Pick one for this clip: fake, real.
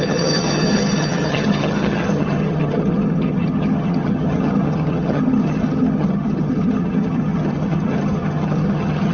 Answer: fake